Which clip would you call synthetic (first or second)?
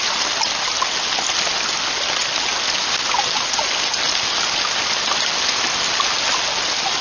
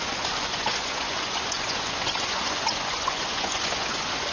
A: second